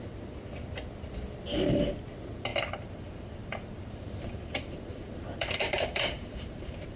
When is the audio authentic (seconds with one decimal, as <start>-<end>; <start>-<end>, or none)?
0.0-2.5

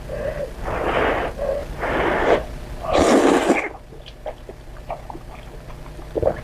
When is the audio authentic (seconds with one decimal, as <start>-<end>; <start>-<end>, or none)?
0.0-1.6; 5.2-6.4

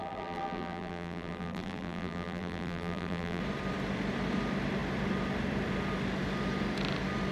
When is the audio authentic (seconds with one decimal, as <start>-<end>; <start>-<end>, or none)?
3.4-7.3

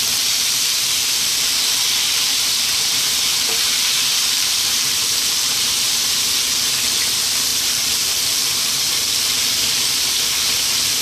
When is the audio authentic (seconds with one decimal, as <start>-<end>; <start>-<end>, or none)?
none